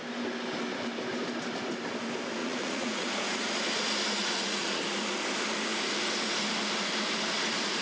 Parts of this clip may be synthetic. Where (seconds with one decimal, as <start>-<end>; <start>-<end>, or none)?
2.4-3.5; 4.2-4.8